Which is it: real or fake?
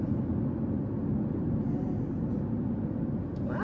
real